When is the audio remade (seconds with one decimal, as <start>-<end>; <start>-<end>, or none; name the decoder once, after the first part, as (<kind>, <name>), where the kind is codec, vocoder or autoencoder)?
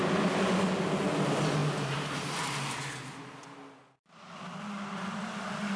none